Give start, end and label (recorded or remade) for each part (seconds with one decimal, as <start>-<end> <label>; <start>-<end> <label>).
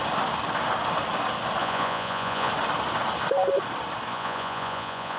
0.0-1.6 recorded; 1.6-2.5 remade; 2.5-4.1 recorded; 4.1-5.2 remade